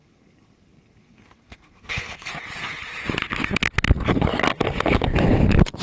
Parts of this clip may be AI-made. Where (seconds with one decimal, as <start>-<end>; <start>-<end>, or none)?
0.0-2.3

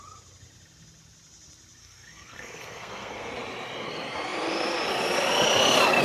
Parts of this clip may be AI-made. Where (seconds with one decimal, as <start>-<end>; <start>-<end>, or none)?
1.8-3.3

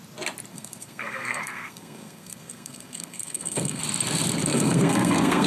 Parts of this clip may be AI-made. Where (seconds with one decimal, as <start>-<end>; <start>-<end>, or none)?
0.5-3.8; 4.5-5.5

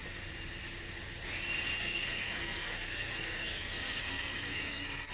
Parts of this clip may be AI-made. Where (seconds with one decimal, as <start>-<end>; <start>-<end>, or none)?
1.8-5.1

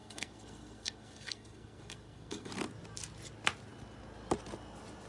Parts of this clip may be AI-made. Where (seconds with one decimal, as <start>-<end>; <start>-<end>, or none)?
0.0-2.5

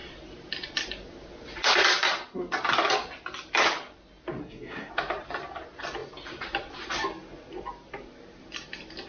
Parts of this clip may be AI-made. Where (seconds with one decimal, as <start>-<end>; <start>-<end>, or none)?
4.4-4.9

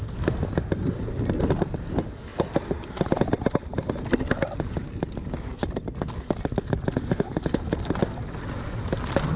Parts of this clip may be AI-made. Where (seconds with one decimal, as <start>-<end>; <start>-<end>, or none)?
none